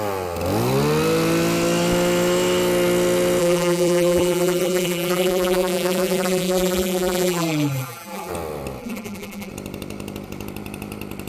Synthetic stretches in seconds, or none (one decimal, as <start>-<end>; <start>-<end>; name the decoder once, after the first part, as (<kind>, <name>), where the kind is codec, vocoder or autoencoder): 3.4-8.3 (vocoder, BigVGAN v2); 8.8-9.5